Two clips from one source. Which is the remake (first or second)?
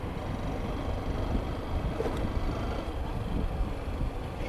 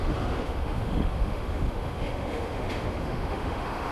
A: second